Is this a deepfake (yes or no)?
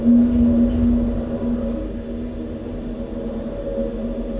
no